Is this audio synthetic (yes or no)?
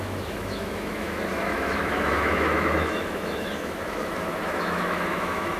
yes